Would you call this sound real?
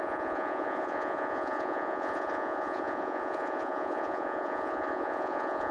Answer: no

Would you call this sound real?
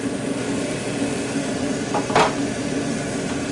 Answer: yes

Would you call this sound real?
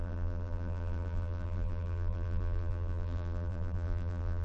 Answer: no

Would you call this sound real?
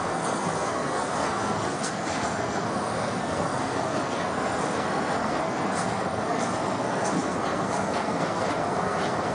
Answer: no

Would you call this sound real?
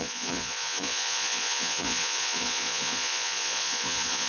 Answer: no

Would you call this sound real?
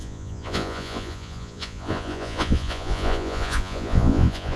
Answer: no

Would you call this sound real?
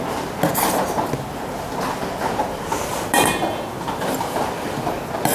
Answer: yes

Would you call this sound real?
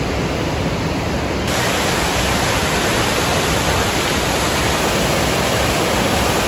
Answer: yes